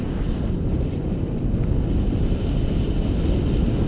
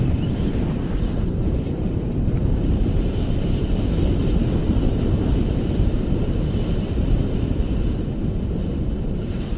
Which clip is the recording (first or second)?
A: first